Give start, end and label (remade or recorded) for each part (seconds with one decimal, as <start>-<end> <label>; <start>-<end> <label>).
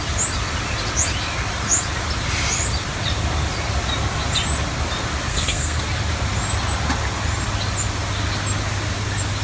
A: 0.0-5.3 recorded; 5.3-5.8 remade; 5.8-9.4 recorded